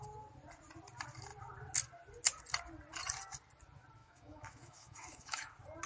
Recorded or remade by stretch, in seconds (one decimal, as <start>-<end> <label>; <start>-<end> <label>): 0.0-4.0 recorded; 4.0-5.5 remade; 5.5-5.9 recorded